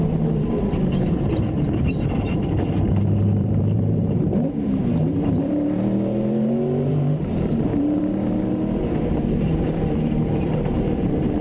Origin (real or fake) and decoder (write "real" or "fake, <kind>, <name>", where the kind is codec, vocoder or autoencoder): fake, vocoder, BigVGAN v2